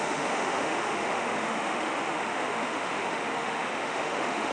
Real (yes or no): no